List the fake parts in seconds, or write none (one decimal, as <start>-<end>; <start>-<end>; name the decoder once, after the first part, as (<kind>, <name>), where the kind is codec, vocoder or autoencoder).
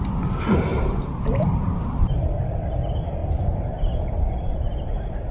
0.7-2.2 (vocoder, BigVGAN v2); 3.2-5.3